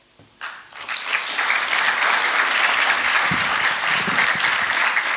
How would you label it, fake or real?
real